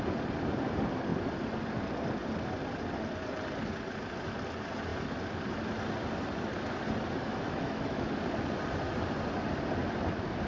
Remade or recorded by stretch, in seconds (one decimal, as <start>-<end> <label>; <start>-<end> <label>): 0.0-7.2 recorded; 7.2-8.1 remade; 8.1-10.5 recorded